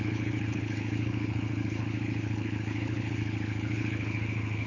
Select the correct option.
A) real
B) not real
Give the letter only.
B